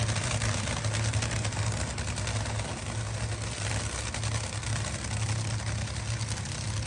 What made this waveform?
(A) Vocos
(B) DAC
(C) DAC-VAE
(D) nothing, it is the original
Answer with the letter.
D